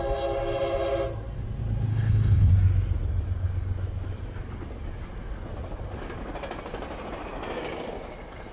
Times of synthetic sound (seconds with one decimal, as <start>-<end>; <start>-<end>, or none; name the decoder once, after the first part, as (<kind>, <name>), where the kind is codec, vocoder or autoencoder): 1.9-2.5 (codec, HILCodec)